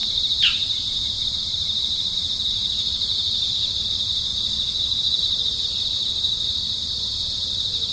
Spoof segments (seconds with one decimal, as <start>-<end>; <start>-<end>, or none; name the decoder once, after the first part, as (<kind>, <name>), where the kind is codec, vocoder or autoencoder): 0.0-4.3 (vocoder, BigVGAN v2); 5.2-7.9